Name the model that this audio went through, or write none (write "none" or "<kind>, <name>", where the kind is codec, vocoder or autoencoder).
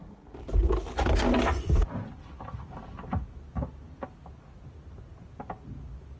none